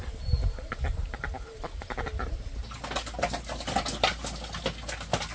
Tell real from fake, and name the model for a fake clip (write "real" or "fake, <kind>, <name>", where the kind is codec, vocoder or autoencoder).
real